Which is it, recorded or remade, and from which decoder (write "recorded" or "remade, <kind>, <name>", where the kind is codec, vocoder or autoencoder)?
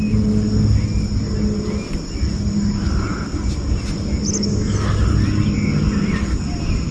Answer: recorded